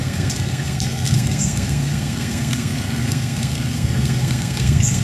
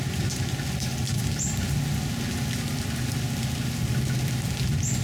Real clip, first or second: second